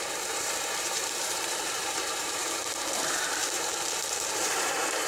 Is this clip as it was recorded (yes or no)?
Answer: no